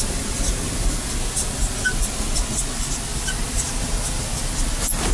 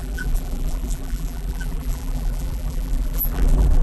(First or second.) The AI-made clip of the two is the second